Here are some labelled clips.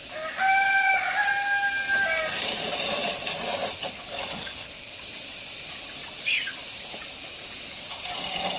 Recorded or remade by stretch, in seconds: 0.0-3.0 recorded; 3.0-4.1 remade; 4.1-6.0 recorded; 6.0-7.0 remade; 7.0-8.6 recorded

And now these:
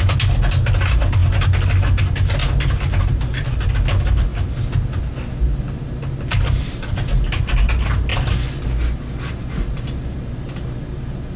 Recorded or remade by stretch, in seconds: 0.0-2.4 recorded; 2.4-2.9 remade; 2.9-8.1 recorded; 8.1-9.3 remade; 9.3-11.4 recorded

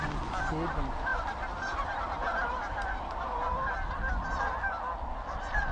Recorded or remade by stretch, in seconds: 0.0-1.1 recorded; 1.1-3.7 remade; 3.7-5.7 recorded

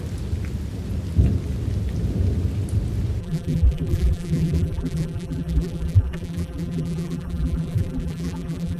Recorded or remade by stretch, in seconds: 0.0-3.2 recorded; 3.2-8.8 remade

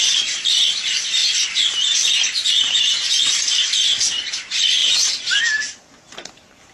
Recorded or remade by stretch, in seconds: 0.0-1.2 recorded; 1.2-3.1 remade; 3.1-4.8 recorded; 4.8-5.4 remade; 5.4-6.7 recorded

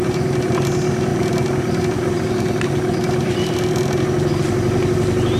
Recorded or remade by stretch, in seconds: 0.0-5.4 recorded